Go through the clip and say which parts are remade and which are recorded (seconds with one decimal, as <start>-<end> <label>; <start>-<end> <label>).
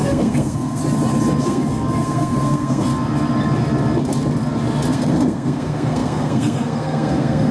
0.0-0.8 remade; 0.8-1.4 recorded; 1.4-2.9 remade; 2.9-4.9 recorded; 4.9-7.5 remade